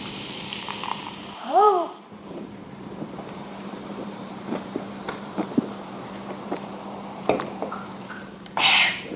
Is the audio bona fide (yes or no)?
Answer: no